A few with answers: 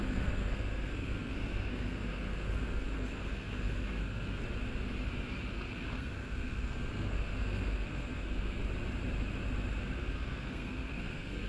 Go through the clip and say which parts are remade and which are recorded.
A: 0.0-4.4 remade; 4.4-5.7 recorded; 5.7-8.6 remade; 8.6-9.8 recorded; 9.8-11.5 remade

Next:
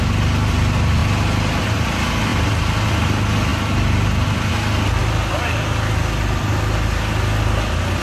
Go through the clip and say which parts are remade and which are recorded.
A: 0.0-8.0 recorded